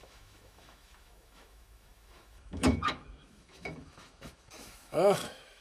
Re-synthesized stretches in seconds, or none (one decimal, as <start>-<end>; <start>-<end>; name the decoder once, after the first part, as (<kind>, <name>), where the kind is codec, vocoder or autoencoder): 0.0-5.6 (autoencoder, DAC-VAE)